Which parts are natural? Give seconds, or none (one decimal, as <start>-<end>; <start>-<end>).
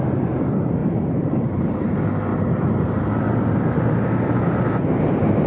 0.0-0.8; 1.9-2.3; 5.1-5.5